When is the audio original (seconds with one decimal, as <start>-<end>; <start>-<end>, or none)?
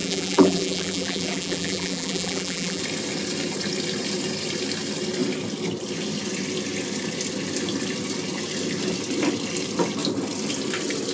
2.8-11.1